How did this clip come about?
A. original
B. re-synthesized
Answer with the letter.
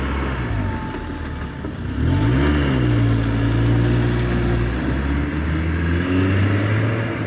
A